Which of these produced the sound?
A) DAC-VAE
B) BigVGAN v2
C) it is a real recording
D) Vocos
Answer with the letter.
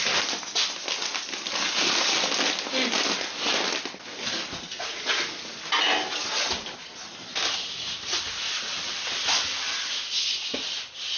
C